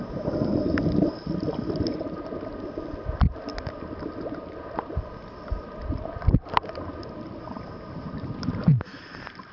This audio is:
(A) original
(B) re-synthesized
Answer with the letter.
A